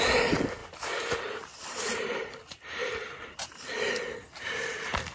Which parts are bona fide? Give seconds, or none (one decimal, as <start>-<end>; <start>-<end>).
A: 0.0-0.6; 3.7-5.1